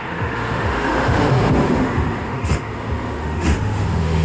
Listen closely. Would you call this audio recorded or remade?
remade